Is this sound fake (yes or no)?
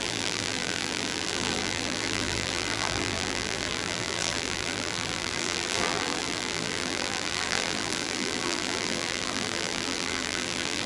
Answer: yes